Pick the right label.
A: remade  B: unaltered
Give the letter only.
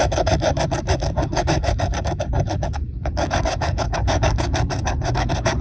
A